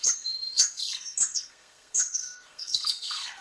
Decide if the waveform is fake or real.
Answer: fake